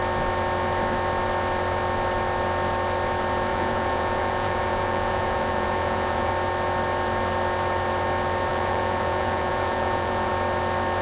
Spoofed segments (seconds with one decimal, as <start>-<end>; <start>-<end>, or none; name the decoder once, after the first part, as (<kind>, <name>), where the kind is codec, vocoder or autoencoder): 3.5-6.3 (vocoder, Vocos); 8.5-10.3